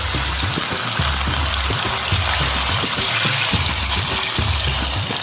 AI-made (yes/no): no